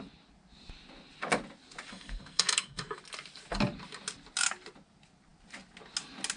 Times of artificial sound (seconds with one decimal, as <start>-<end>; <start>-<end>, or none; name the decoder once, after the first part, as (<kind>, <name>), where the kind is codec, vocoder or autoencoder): 1.9-3.0 (codec, SNAC)